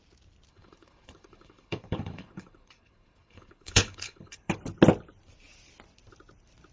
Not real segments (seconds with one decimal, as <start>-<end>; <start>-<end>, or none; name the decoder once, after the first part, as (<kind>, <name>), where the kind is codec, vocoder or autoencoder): 0.5-4.5 (codec, HILCodec)